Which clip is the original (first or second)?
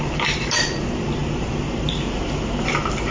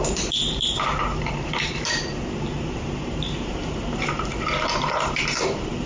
first